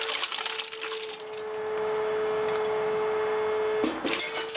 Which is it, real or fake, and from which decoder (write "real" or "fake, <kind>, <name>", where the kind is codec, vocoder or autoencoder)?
real